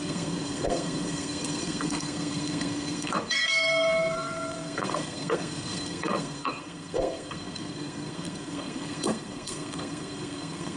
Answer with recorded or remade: remade